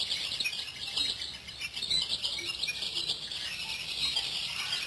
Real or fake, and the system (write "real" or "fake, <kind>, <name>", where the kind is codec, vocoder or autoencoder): fake, vocoder, BigVGAN v2